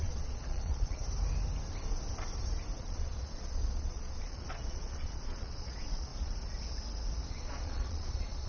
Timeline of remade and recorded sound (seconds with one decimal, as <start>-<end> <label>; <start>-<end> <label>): 0.0-1.0 remade; 1.0-2.8 recorded; 2.8-6.1 remade; 6.1-7.3 recorded; 7.3-8.5 remade